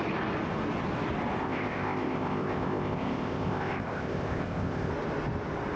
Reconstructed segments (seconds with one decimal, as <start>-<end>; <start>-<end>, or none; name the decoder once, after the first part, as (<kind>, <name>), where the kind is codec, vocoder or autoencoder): 1.4-4.9 (codec, ZipCodec)